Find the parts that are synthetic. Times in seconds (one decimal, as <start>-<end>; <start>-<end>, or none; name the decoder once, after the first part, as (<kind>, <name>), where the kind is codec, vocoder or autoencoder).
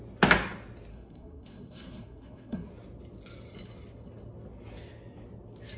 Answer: 0.9-2.7 (codec, SNAC)